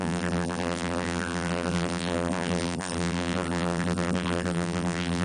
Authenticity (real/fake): fake